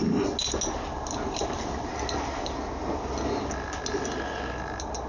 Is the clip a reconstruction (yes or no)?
no